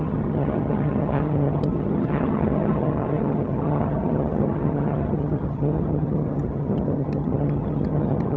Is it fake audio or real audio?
fake